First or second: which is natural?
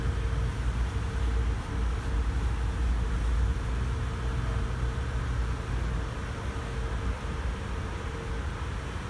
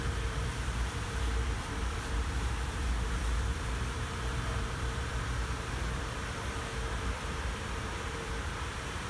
first